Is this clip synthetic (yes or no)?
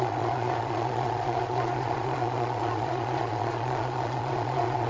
yes